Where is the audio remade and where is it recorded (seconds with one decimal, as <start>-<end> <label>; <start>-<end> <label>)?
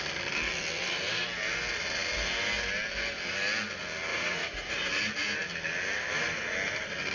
0.0-4.1 recorded; 4.1-4.9 remade; 4.9-7.1 recorded